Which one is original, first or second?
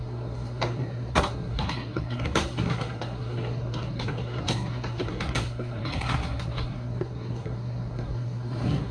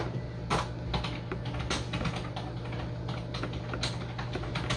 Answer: second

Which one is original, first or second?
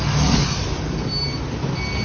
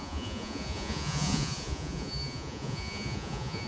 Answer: first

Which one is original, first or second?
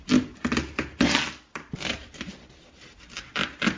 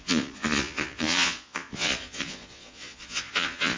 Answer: first